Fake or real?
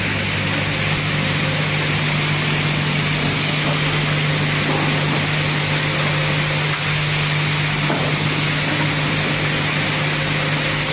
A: real